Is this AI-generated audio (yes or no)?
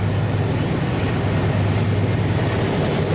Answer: no